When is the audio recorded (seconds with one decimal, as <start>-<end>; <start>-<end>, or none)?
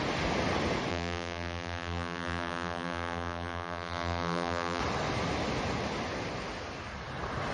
0.0-0.9; 4.8-7.5